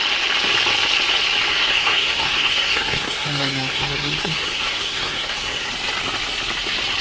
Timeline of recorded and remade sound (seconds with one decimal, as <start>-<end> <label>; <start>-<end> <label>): 0.0-1.5 recorded; 1.5-5.7 remade; 5.7-7.0 recorded